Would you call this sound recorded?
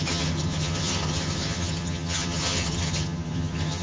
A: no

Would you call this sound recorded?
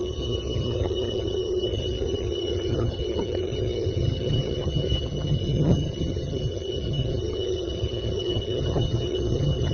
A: no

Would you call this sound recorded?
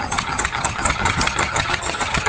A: no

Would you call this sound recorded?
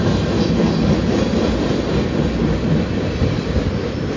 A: yes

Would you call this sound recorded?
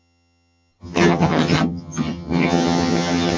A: no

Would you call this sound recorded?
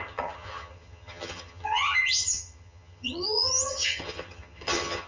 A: no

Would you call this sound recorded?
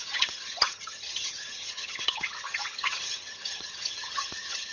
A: no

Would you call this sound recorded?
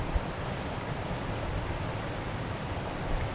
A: yes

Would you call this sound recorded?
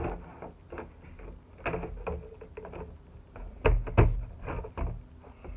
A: yes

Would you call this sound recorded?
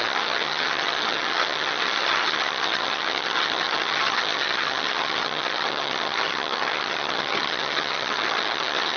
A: no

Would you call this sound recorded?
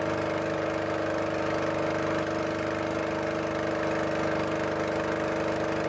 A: yes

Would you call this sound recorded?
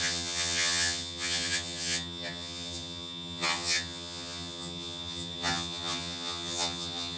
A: no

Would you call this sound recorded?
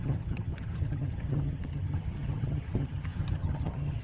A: no